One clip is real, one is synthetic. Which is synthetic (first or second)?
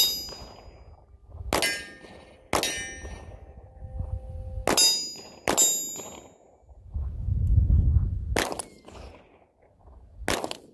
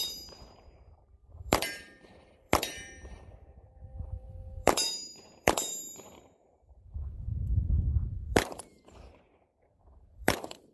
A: second